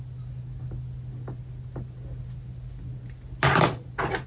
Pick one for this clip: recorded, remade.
recorded